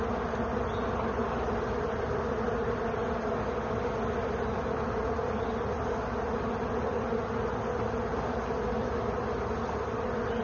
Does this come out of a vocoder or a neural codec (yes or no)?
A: no